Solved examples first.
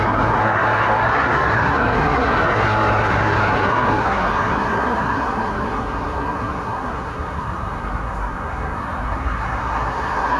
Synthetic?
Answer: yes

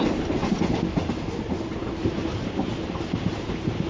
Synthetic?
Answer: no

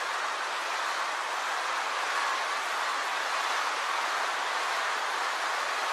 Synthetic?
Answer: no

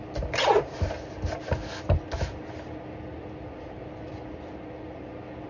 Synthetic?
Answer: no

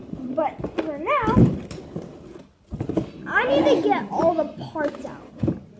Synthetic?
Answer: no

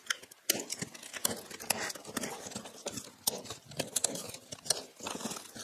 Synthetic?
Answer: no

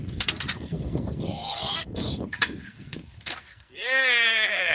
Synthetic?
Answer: yes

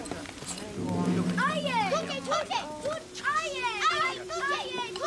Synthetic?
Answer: no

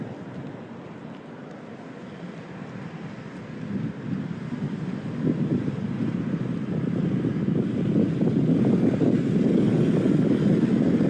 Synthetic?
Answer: no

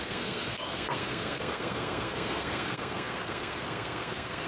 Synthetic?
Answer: yes